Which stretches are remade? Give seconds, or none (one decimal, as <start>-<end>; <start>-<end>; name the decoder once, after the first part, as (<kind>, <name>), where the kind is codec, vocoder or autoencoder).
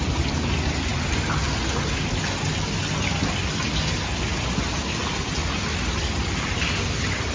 none